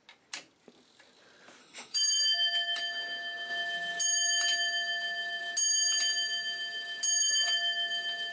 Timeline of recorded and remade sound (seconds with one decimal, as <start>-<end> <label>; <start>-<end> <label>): 0.0-1.6 recorded; 1.6-2.8 remade; 2.8-7.2 recorded; 7.2-7.9 remade; 7.9-8.3 recorded